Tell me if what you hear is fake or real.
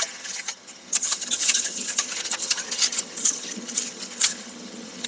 fake